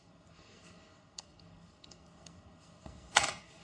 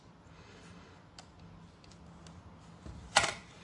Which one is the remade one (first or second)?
first